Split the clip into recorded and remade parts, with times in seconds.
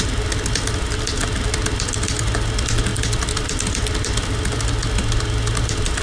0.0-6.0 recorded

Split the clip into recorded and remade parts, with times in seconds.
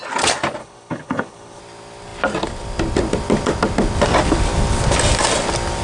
0.0-0.6 recorded; 0.6-1.6 remade; 1.6-5.8 recorded